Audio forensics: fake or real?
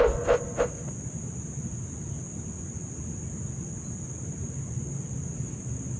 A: real